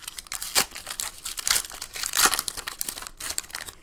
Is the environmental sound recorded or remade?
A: recorded